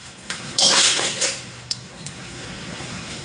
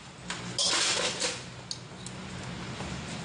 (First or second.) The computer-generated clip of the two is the first